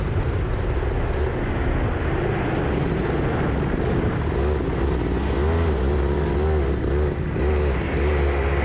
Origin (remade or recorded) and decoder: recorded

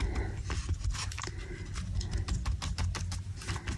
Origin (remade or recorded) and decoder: recorded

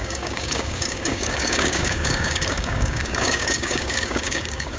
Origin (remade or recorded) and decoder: remade, codec, DAC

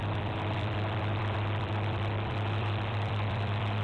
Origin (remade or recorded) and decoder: remade, vocoder, BigVGAN v2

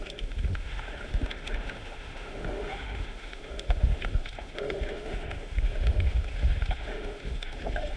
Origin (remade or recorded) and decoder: remade, autoencoder, DAC-VAE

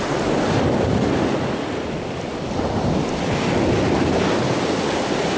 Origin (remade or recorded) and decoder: recorded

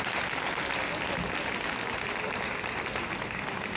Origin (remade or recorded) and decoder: recorded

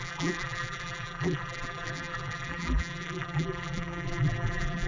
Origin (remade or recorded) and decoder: remade, vocoder, BigVGAN v2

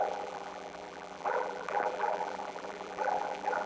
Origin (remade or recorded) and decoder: remade, vocoder, BigVGAN v2